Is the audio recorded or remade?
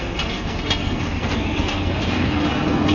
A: remade